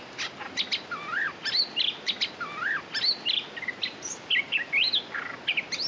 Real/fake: real